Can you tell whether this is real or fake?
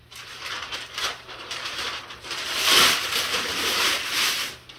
fake